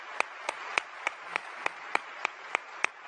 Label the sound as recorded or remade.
remade